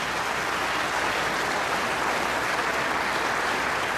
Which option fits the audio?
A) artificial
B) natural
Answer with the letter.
B